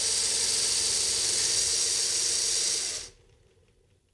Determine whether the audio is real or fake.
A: real